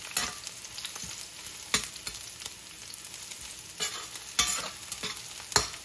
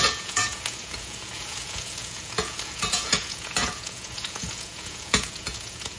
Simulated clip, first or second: second